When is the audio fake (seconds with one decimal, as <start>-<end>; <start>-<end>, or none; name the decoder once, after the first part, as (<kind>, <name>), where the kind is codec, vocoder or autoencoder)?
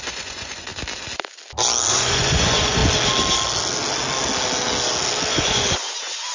0.0-0.7 (vocoder, Vocos); 1.9-2.8; 5.3-6.3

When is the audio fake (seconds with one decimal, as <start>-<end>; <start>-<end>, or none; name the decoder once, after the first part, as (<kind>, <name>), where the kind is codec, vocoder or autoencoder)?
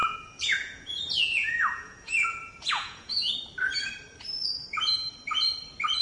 0.0-3.3 (vocoder, Vocos)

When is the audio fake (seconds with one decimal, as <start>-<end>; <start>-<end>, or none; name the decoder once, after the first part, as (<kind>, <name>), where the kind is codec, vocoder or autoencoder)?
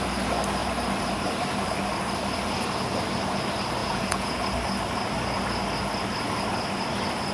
3.8-4.4 (vocoder, Vocos)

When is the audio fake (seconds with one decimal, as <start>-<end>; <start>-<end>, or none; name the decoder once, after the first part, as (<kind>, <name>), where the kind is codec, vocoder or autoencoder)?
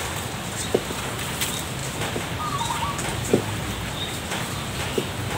none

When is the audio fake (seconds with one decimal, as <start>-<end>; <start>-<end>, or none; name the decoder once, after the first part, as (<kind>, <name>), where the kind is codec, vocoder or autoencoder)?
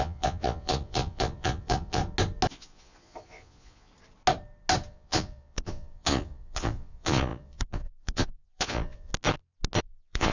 0.0-2.0 (vocoder, Vocos); 2.5-3.9; 4.9-9.1; 9.8-10.3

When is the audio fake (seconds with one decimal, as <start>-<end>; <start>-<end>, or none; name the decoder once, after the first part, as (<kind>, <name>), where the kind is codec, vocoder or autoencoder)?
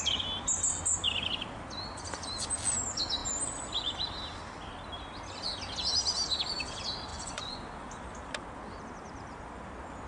7.1-7.6 (vocoder, Vocos)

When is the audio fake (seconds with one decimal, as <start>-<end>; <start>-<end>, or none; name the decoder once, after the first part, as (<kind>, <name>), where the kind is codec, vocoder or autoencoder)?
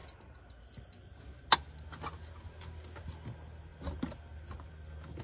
none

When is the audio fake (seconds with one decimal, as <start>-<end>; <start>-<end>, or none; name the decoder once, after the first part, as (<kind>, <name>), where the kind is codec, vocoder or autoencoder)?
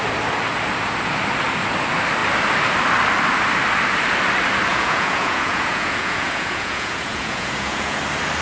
4.7-8.0 (vocoder, Vocos)